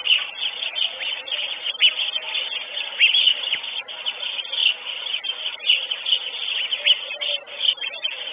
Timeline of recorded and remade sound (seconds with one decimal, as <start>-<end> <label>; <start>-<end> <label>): 0.0-8.3 recorded